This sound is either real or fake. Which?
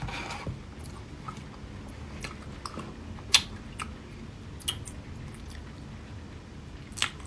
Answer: real